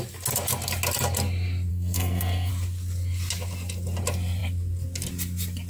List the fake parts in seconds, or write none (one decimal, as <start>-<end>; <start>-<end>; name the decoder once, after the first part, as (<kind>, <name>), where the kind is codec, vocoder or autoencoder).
1.7-2.5 (codec, SNAC)